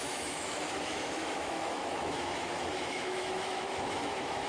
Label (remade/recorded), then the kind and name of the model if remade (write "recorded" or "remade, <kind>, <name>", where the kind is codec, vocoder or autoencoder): remade, autoencoder, DAC-VAE